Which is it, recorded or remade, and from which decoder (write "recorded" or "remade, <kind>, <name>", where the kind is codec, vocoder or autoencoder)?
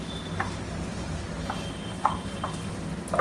recorded